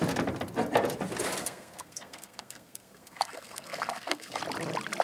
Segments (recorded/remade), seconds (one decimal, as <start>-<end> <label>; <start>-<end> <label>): 0.0-1.4 recorded; 1.4-4.4 remade; 4.4-5.0 recorded